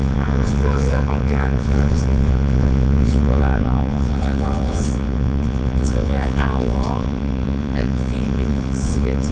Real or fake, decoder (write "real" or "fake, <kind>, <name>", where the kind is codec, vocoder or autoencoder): fake, vocoder, WaveNeXt